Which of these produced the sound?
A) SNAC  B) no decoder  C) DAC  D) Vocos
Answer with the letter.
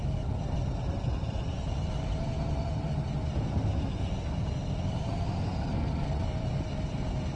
B